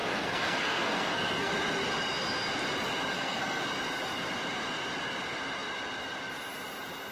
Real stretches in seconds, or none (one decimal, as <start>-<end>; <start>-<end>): 1.5-3.1; 3.6-7.1